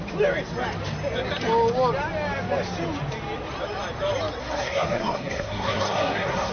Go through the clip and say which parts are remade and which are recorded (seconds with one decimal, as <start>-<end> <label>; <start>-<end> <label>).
0.0-4.4 recorded; 4.4-6.5 remade